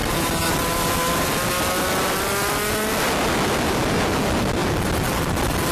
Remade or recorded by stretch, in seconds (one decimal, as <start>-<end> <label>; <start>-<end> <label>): 0.0-5.7 recorded